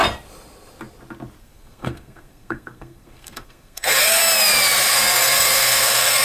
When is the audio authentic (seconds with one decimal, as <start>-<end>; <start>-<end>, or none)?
0.0-1.4; 4.2-4.9